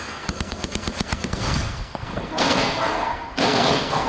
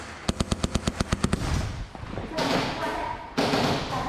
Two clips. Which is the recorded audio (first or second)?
second